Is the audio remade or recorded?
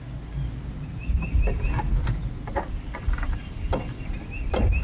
recorded